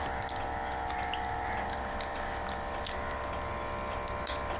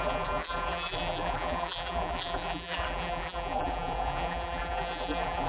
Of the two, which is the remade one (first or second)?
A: second